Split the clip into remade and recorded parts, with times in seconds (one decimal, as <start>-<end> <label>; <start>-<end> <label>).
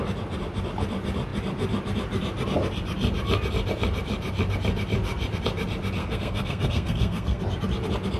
0.0-6.0 recorded; 6.0-7.4 remade; 7.4-8.2 recorded